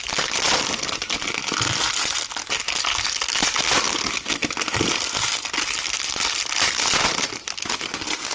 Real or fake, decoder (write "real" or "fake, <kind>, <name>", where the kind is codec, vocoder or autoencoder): real